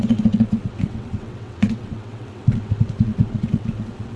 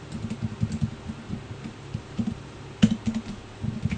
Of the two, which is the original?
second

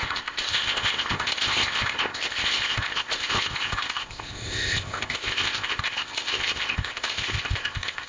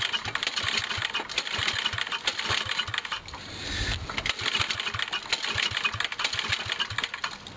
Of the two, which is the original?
second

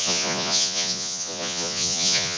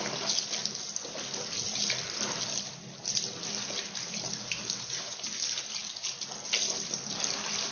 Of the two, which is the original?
second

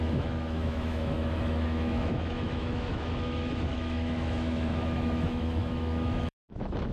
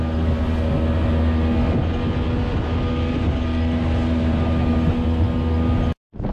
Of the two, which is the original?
second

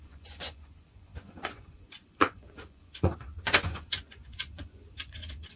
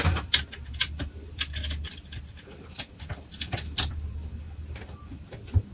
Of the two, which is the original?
second